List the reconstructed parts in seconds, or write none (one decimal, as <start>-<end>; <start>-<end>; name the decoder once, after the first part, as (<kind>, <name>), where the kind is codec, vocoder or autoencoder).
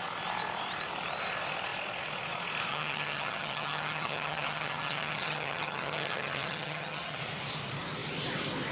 2.7-7.2 (vocoder, HiFi-GAN)